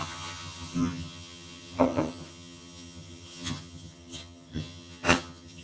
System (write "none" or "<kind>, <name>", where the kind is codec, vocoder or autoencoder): vocoder, HiFi-GAN